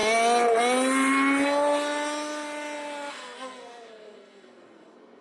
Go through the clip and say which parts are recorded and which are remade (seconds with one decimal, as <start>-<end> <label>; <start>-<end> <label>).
0.0-3.1 recorded; 3.1-5.2 remade

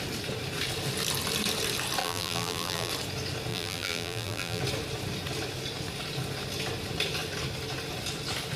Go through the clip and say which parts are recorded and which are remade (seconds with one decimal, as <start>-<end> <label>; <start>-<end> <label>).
0.0-2.0 recorded; 2.0-2.9 remade; 2.9-3.5 recorded; 3.5-4.6 remade; 4.6-8.6 recorded

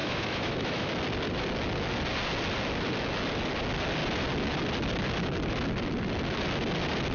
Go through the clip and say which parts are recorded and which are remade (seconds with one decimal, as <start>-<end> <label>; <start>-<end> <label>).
0.0-0.9 remade; 0.9-7.1 recorded

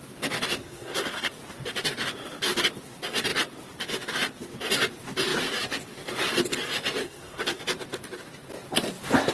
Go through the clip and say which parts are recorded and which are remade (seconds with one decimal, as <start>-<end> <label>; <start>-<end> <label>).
0.0-0.6 recorded; 0.6-1.3 remade; 1.3-7.0 recorded; 7.0-7.6 remade; 7.6-9.3 recorded

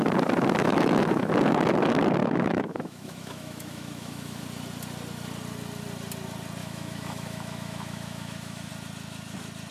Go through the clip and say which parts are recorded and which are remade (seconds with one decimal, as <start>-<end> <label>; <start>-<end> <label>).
0.0-0.6 recorded; 0.6-1.3 remade; 1.3-2.2 recorded; 2.2-4.4 remade; 4.4-6.6 recorded; 6.6-8.7 remade; 8.7-9.7 recorded

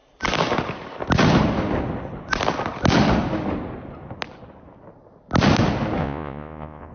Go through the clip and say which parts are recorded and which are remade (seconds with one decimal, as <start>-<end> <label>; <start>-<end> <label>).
0.0-6.0 recorded; 6.0-6.9 remade

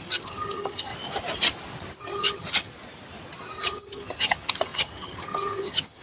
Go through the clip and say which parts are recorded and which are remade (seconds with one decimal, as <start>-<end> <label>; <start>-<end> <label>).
0.0-0.9 remade; 0.9-2.0 recorded; 2.0-2.7 remade; 2.7-3.6 recorded; 3.6-6.0 remade